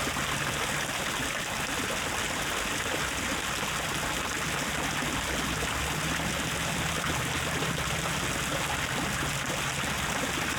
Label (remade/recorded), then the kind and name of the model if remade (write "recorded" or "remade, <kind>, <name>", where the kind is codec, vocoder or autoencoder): recorded